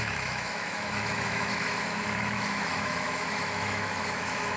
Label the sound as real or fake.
fake